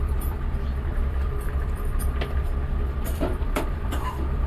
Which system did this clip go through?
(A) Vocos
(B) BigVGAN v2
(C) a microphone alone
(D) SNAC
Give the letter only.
B